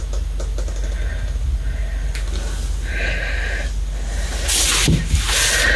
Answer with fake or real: real